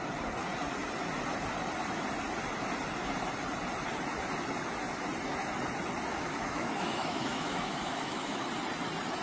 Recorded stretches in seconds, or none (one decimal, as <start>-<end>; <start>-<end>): 0.0-6.1; 8.5-9.2